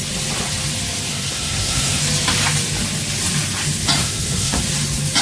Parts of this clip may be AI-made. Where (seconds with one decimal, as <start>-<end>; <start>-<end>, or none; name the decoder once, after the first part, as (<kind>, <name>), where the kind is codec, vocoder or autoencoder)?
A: 1.1-2.0 (codec, SNAC); 4.0-4.6